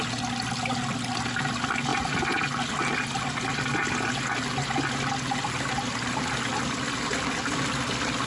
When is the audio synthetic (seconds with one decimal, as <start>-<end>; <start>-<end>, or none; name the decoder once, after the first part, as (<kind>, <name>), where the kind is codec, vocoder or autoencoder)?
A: none